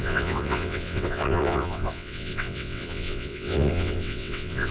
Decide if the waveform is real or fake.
fake